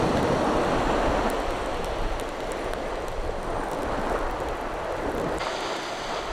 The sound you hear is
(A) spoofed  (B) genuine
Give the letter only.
B